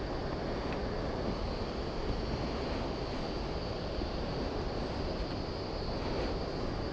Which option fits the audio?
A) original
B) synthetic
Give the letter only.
A